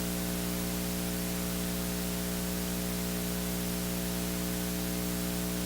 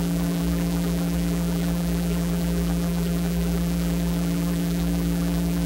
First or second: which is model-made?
second